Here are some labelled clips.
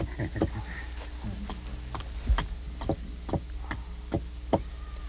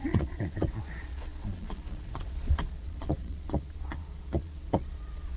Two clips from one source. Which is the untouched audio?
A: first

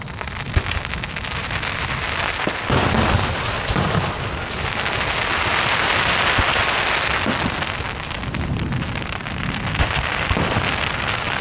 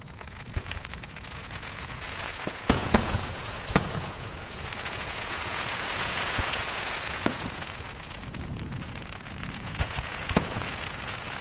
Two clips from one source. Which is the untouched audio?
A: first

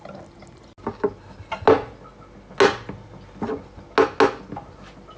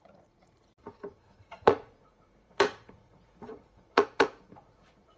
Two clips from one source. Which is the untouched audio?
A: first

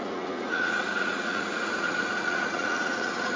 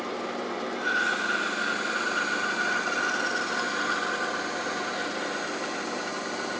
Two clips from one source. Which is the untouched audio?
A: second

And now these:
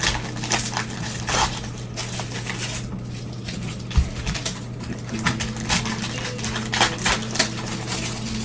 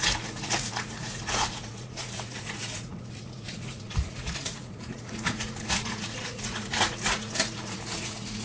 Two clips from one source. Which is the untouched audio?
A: first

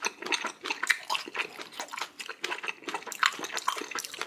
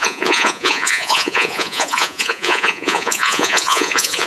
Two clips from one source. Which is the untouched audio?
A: first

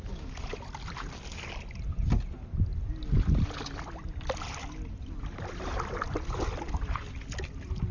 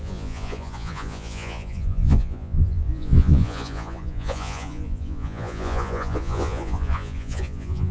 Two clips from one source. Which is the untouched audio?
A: first